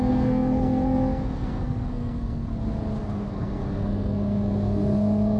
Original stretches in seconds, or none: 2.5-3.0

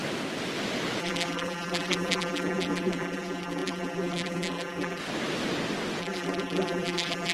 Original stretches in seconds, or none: 0.0-1.0; 5.0-6.0